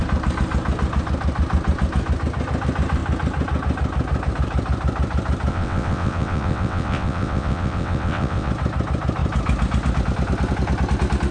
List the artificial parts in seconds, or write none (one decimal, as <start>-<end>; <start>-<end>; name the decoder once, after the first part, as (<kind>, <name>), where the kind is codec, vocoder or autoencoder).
5.5-8.5 (vocoder, WaveNeXt)